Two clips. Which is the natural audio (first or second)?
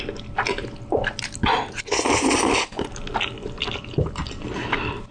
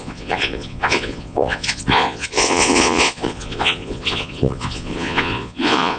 first